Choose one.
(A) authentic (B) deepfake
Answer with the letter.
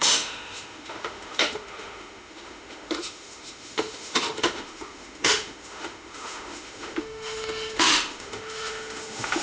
B